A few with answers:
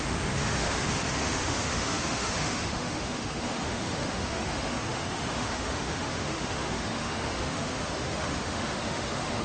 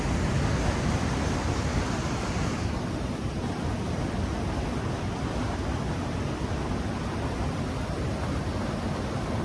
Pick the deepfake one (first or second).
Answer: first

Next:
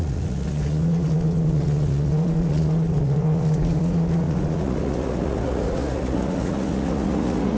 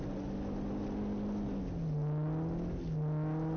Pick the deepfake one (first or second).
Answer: first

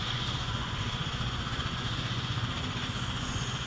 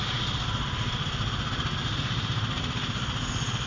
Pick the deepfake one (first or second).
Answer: first